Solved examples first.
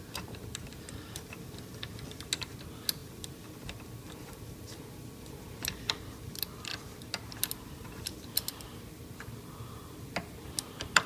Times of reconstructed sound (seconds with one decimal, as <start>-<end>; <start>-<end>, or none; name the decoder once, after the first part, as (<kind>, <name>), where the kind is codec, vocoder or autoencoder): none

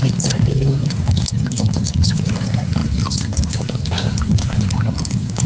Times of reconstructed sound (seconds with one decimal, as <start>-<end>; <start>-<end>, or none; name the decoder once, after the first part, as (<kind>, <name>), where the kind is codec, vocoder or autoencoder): 0.0-5.5 (codec, SNAC)

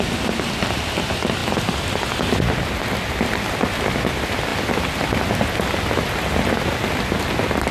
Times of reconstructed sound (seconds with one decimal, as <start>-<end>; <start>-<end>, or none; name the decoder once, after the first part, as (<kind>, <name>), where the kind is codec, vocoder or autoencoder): none